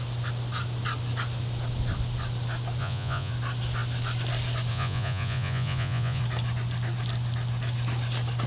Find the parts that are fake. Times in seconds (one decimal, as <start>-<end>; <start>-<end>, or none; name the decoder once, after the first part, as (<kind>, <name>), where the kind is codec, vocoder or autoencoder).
2.8-3.3 (vocoder, Vocos); 4.7-6.2